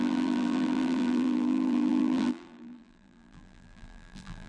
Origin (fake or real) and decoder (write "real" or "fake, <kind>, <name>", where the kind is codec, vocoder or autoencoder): fake, vocoder, BigVGAN v2